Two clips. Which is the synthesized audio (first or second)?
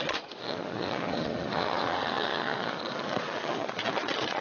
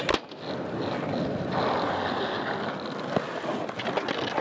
first